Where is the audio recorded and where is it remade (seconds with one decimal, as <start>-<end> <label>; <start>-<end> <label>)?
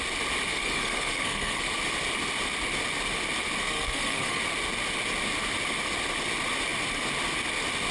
0.0-0.5 recorded; 0.5-1.6 remade; 1.6-3.6 recorded; 3.6-4.4 remade; 4.4-7.9 recorded